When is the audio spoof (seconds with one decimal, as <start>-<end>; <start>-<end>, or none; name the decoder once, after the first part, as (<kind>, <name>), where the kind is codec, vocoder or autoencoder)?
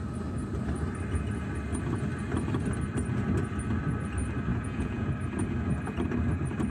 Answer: 4.5-5.1 (vocoder, Vocos)